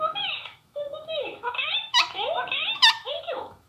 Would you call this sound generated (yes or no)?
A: yes